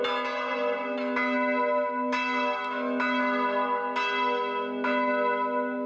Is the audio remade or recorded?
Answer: recorded